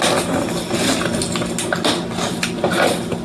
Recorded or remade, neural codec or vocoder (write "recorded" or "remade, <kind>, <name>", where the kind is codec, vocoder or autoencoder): recorded